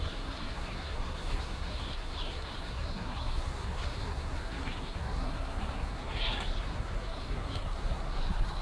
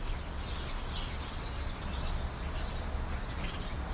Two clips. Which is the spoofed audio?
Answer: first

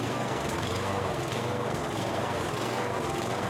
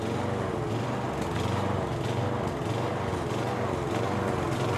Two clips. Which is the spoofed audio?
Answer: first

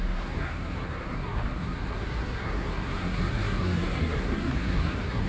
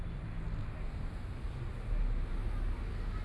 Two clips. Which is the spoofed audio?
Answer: first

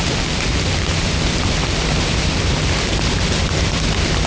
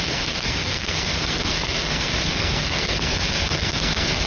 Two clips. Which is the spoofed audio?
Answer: second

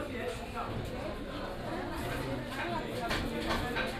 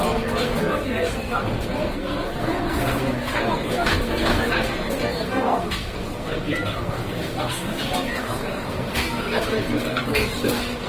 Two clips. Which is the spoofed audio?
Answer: second